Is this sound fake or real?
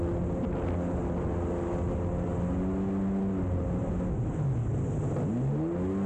real